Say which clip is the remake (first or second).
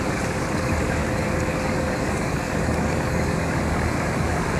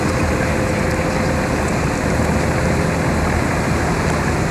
first